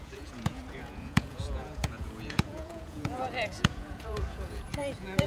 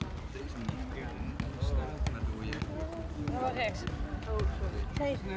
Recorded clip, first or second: second